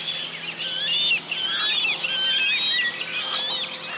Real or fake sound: real